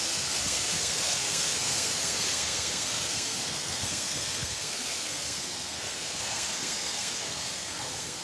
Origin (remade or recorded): remade